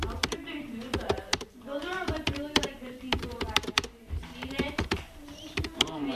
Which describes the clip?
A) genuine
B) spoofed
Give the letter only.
B